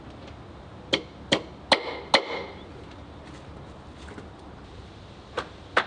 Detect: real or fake real